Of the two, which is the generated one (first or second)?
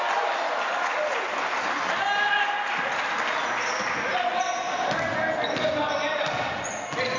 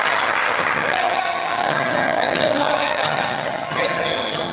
second